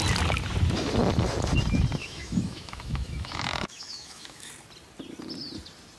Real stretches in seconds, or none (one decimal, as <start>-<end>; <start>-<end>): 0.0-2.0; 4.5-6.0